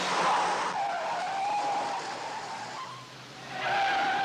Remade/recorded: recorded